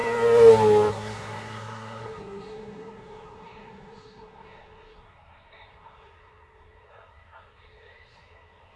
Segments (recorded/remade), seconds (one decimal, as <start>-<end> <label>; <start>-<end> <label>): 0.0-0.9 recorded; 0.9-8.8 remade